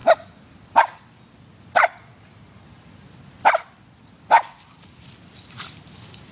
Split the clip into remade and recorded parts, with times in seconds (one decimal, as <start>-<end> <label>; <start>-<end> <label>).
0.0-6.3 recorded

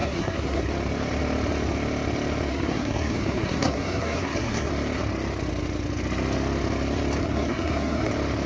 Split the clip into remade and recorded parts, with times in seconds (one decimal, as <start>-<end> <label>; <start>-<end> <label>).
0.0-0.7 remade; 0.7-2.5 recorded; 2.5-4.7 remade; 4.7-7.2 recorded; 7.2-8.1 remade; 8.1-8.5 recorded

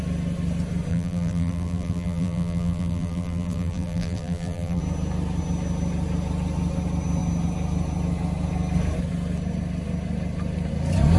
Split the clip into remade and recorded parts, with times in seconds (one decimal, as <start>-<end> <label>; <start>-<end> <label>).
0.0-0.9 recorded; 0.9-4.8 remade; 4.8-11.2 recorded

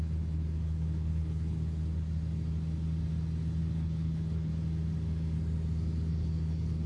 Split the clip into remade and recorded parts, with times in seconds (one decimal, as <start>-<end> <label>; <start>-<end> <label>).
0.0-1.8 remade; 1.8-3.6 recorded; 3.6-4.5 remade; 4.5-6.1 recorded; 6.1-6.9 remade

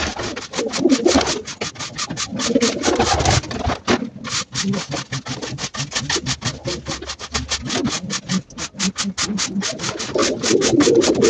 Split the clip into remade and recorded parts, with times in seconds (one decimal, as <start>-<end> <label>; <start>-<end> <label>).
0.0-0.6 remade; 0.6-10.2 recorded; 10.2-11.3 remade

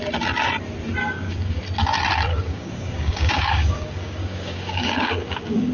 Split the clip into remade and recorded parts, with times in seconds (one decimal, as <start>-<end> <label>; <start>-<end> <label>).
0.0-1.0 recorded; 1.0-1.6 remade; 1.6-2.3 recorded; 2.3-5.7 remade

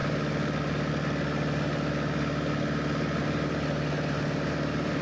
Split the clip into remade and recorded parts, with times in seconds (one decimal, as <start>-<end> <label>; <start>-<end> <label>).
0.0-5.0 recorded

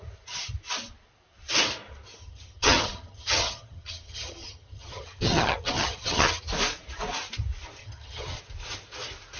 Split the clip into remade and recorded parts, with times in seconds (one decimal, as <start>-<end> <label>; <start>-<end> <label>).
0.0-2.2 recorded; 2.2-6.4 remade; 6.4-7.8 recorded; 7.8-8.4 remade; 8.4-9.4 recorded